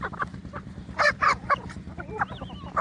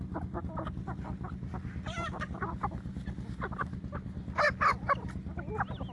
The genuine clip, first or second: second